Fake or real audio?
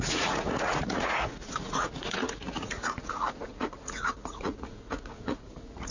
fake